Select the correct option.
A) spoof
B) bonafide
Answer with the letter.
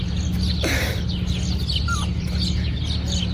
B